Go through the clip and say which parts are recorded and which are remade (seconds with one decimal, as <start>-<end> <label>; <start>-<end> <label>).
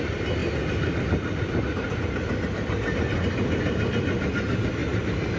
0.0-5.4 recorded